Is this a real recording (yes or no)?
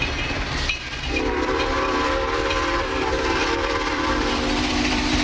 no